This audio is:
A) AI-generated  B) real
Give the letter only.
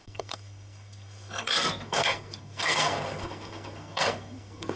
A